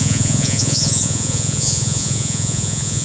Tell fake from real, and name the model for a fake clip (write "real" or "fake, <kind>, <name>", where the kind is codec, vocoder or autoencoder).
fake, vocoder, Vocos